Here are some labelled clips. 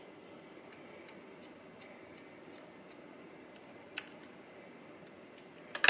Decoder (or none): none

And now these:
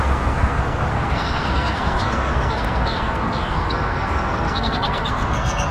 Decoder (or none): codec, SNAC